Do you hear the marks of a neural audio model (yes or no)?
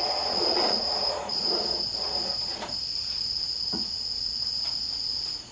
yes